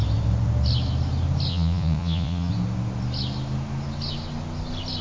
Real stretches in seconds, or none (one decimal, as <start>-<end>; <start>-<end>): 0.0-1.5; 2.5-5.0